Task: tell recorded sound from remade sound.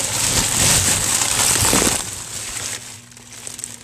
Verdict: recorded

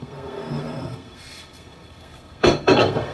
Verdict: remade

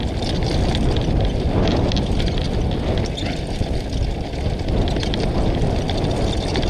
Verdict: recorded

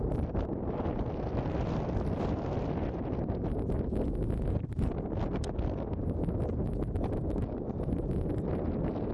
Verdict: recorded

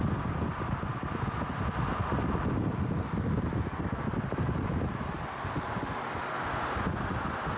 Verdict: recorded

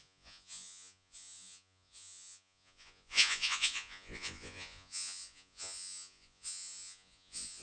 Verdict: remade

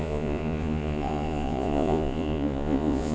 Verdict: remade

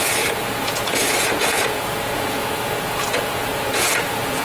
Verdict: remade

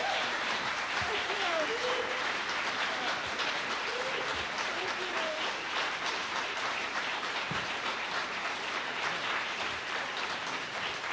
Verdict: remade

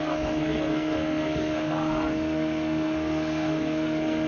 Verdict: remade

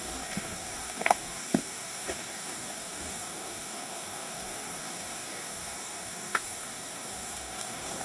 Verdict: remade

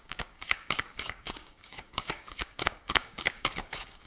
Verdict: remade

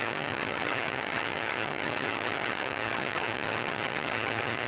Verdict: remade